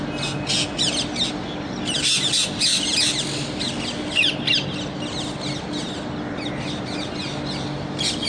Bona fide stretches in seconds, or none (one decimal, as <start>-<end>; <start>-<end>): 0.0-8.3

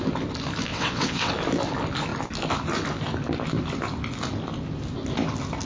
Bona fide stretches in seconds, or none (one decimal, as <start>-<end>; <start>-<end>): 0.0-0.7; 1.3-5.7